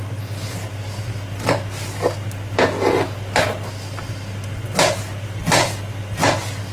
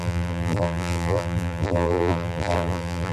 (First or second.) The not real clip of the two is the second